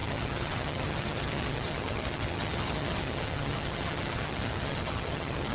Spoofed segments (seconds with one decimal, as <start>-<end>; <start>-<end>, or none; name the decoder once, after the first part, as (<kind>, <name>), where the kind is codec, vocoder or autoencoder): 0.0-5.5 (vocoder, HiFi-GAN)